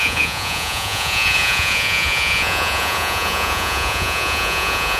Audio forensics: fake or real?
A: fake